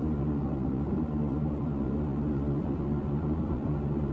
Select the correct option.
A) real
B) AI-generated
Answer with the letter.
B